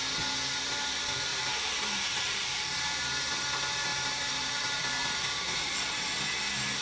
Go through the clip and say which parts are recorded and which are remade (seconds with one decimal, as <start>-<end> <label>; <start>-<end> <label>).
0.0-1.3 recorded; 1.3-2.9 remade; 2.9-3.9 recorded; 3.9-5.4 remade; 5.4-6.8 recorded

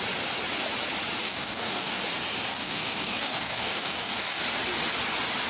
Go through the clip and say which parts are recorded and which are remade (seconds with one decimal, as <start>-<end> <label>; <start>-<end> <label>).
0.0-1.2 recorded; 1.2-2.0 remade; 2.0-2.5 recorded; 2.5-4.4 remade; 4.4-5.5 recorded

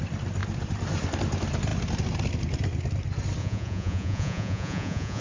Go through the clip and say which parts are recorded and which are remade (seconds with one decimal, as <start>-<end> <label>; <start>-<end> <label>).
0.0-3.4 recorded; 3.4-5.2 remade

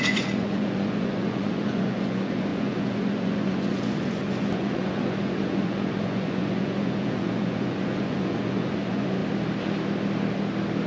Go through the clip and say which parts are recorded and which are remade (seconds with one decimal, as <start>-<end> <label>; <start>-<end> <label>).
0.0-9.2 remade; 9.2-10.9 recorded

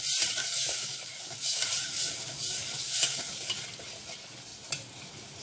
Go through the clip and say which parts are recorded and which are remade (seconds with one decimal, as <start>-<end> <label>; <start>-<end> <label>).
0.0-0.4 recorded; 0.4-3.6 remade; 3.6-5.4 recorded